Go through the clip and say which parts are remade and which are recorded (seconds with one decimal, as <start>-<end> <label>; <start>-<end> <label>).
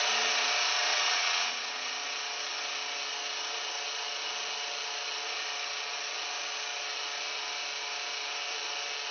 0.0-0.9 recorded; 0.9-1.9 remade; 1.9-9.1 recorded